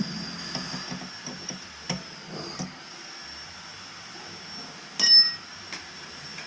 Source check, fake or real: real